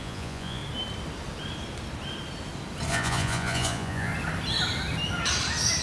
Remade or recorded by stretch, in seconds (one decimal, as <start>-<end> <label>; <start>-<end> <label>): 0.0-0.6 remade; 0.6-2.9 recorded; 2.9-4.1 remade; 4.1-5.8 recorded